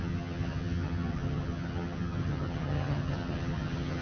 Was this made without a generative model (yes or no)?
no